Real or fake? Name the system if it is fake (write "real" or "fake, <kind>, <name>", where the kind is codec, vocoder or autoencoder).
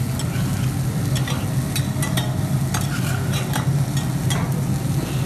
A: real